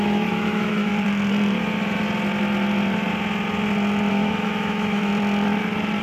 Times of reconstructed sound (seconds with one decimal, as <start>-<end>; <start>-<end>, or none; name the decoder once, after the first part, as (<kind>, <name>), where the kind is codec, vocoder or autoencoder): 0.0-0.9 (autoencoder, DAC-VAE); 4.1-5.1